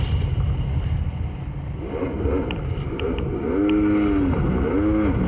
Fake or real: real